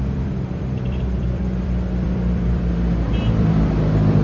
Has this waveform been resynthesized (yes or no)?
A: yes